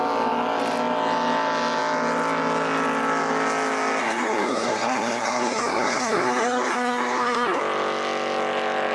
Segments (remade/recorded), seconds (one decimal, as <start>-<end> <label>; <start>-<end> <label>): 0.0-4.0 recorded; 4.0-7.6 remade; 7.6-8.9 recorded

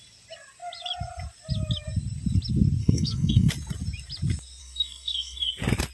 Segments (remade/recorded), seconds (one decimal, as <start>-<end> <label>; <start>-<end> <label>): 0.0-2.8 recorded; 2.8-3.5 remade; 3.5-4.6 recorded; 4.6-5.5 remade; 5.5-5.9 recorded

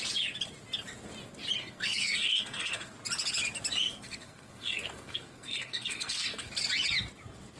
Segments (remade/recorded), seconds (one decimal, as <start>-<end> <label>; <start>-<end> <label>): 0.0-1.6 recorded; 1.6-2.9 remade; 2.9-3.8 recorded; 3.8-6.5 remade; 6.5-7.6 recorded

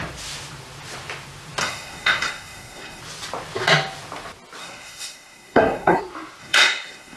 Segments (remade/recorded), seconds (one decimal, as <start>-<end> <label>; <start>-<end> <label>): 0.0-1.6 recorded; 1.6-3.0 remade; 3.0-4.6 recorded; 4.6-6.0 remade; 6.0-6.4 recorded; 6.4-7.2 remade

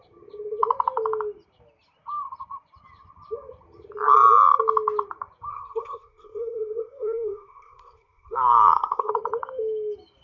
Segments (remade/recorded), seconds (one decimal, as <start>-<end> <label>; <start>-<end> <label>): 0.0-5.5 recorded; 5.5-9.1 remade; 9.1-10.2 recorded